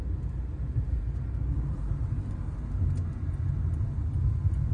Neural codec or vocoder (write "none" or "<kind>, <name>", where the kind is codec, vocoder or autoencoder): none